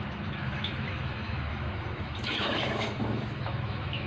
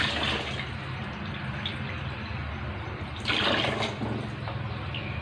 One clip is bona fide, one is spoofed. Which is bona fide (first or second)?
second